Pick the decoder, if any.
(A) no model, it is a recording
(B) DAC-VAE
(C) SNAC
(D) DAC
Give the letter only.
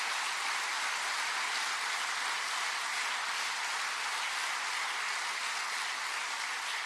A